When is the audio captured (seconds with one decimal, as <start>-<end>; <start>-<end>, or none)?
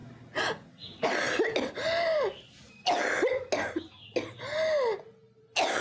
0.0-5.8